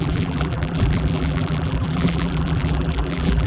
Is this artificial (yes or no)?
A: yes